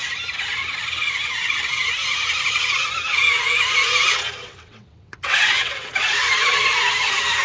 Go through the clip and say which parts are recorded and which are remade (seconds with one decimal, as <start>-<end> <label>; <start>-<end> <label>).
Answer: 0.0-4.4 recorded; 4.4-5.9 remade; 5.9-7.4 recorded